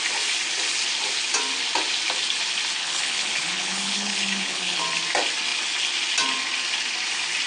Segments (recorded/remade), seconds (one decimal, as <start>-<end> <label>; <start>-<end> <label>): 0.0-2.8 recorded; 2.8-4.8 remade; 4.8-7.5 recorded